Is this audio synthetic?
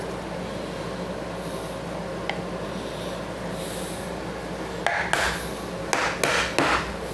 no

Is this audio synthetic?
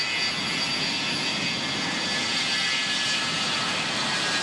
no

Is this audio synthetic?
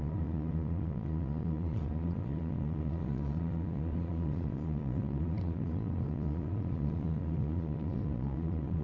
yes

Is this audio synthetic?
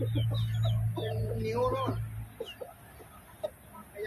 no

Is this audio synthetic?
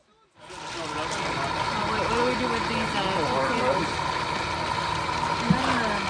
no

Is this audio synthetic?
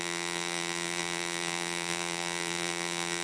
yes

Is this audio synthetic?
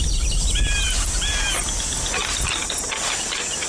no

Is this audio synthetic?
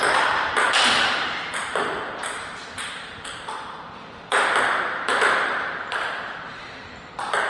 yes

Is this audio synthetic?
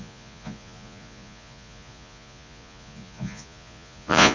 yes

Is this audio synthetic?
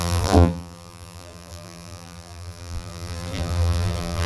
yes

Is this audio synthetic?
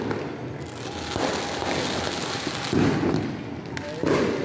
no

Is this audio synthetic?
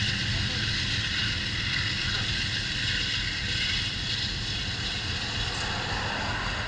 no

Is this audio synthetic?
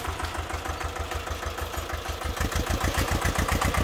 no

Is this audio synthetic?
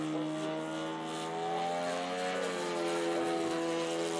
no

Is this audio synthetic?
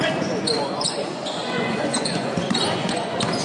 yes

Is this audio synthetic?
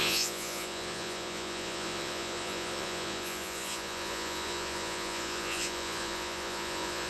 yes